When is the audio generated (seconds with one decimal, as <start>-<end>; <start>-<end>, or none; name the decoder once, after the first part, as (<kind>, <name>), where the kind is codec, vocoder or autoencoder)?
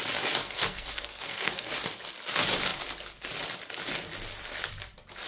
0.4-1.7 (codec, SNAC)